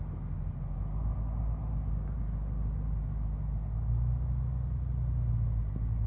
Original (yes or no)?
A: yes